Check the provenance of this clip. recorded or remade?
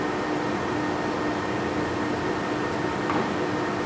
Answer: recorded